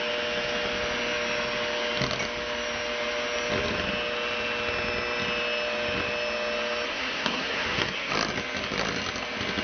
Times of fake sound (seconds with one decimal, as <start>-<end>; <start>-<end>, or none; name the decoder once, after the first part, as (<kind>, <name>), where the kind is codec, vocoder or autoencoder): 6.9-8.1 (codec, SNAC)